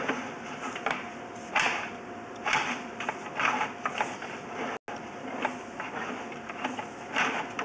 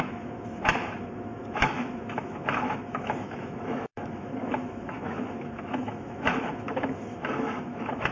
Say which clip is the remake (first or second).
second